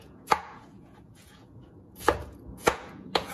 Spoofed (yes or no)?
yes